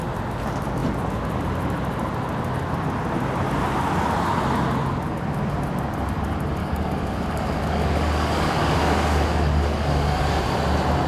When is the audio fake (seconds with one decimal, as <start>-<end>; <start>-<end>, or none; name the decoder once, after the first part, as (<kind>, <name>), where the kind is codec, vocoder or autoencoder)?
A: 6.6-10.4 (codec, DAC)